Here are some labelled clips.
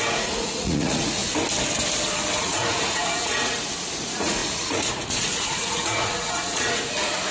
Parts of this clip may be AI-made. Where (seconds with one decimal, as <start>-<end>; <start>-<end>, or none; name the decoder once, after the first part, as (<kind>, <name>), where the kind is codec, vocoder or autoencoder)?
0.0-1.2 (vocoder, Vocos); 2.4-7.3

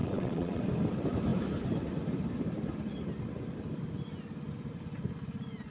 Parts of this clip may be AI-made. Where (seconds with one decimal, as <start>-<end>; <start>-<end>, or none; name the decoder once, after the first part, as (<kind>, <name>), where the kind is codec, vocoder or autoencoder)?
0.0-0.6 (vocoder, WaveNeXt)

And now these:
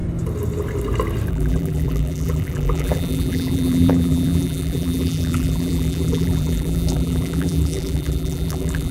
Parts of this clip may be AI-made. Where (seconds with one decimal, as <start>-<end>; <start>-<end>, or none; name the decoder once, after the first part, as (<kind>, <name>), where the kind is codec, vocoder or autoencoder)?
1.3-8.9 (vocoder, BigVGAN v2)

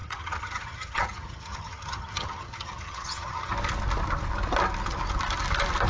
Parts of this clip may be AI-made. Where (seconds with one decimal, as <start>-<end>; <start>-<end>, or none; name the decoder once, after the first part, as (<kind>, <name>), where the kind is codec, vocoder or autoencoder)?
0.0-3.5 (vocoder, HiFi-GAN)

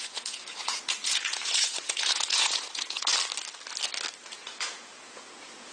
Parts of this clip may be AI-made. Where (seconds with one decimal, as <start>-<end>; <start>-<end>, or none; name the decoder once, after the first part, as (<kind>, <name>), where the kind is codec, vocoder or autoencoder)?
0.0-3.1 (vocoder, Vocos); 4.3-5.7